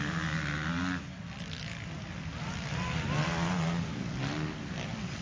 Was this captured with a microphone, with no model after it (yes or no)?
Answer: yes